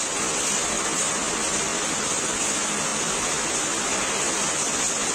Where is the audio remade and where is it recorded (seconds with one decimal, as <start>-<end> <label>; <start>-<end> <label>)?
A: 0.0-2.9 recorded; 2.9-3.5 remade; 3.5-5.1 recorded